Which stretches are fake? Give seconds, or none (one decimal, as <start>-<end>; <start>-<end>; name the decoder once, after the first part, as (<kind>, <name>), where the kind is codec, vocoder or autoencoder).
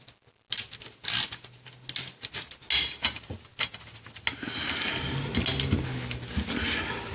none